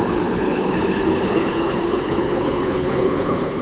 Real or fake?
fake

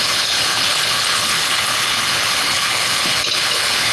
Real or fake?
fake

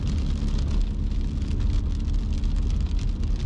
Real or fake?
real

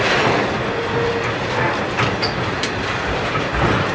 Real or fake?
real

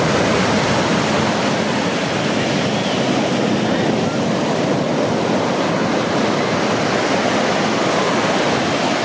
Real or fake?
real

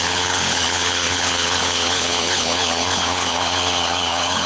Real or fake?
fake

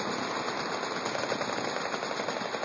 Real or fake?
real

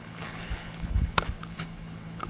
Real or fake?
fake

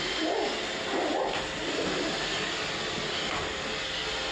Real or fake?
real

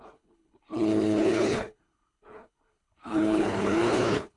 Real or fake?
fake